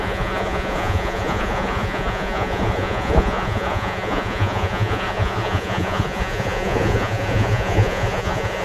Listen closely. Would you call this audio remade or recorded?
remade